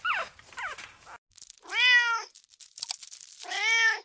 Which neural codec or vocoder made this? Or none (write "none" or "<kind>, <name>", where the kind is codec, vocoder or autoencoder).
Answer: none